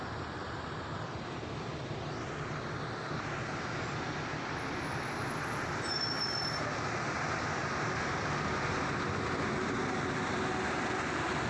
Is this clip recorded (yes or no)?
yes